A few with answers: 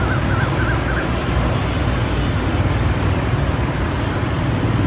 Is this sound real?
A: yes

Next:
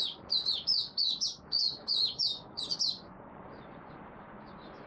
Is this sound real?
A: no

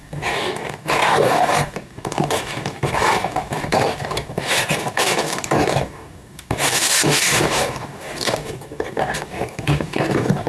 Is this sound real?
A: no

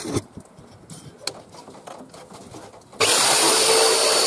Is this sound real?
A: yes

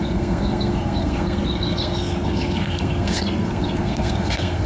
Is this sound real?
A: no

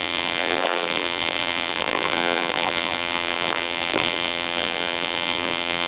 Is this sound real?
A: no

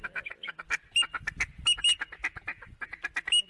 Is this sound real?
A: yes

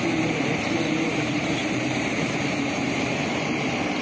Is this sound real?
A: no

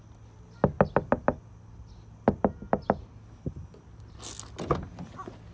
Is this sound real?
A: yes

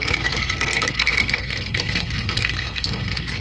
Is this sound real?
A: no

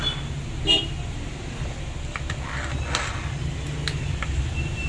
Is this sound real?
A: yes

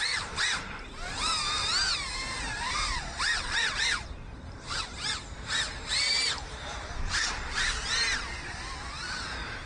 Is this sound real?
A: no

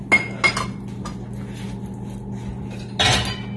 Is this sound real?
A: yes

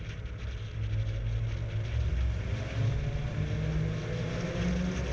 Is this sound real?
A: yes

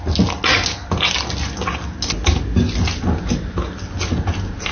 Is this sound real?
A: yes